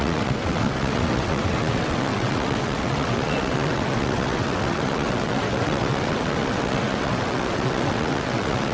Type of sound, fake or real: fake